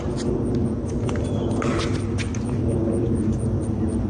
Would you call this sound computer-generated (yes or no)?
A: no